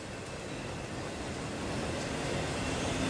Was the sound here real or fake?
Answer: real